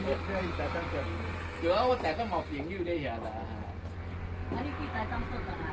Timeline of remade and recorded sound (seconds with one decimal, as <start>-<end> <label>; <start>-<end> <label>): 0.0-5.7 recorded